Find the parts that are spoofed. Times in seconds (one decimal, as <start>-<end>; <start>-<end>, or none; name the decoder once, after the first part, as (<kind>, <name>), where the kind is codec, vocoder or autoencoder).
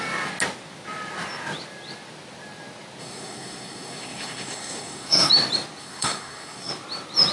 3.0-5.3 (codec, SNAC); 5.8-6.7